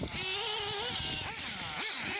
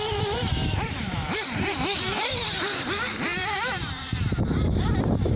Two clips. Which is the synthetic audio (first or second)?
second